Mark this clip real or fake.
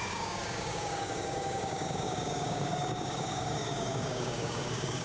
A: fake